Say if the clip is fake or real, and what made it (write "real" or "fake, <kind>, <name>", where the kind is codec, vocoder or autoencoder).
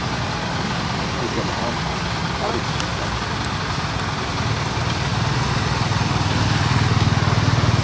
real